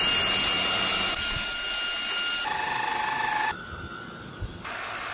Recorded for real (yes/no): yes